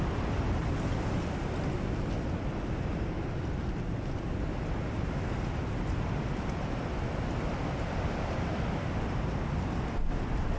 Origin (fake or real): real